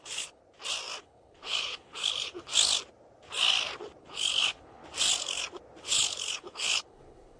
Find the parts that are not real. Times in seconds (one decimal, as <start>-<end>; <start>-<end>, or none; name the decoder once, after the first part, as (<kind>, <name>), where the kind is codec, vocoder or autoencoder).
0.0-0.4 (codec, HILCodec); 1.0-2.5; 4.0-4.8; 5.8-7.4